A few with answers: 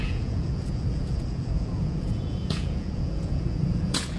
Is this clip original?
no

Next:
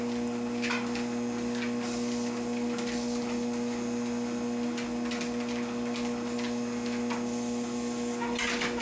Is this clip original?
yes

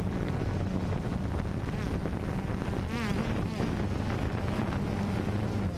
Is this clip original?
yes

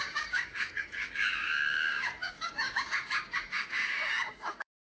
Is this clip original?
no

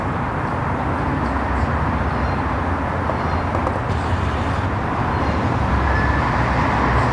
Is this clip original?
yes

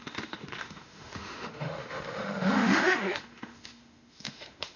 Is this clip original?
no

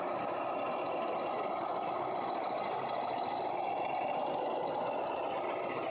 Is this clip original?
yes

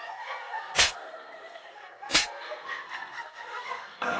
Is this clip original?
no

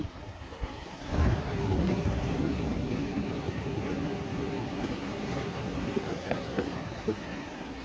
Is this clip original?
no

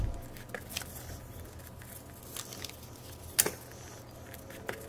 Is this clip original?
yes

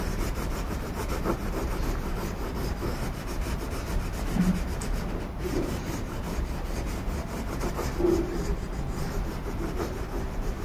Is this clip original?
no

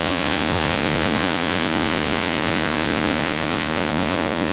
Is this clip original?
no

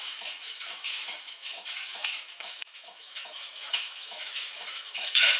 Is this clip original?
no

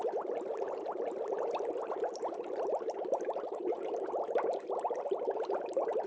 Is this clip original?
no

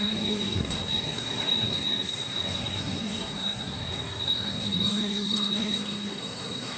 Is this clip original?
no